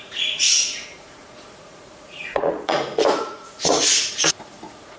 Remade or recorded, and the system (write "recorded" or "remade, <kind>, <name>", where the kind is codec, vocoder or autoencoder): remade, vocoder, Vocos